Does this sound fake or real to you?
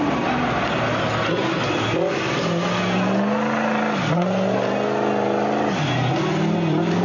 real